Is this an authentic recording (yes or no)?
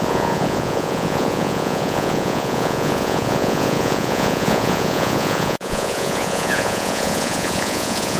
no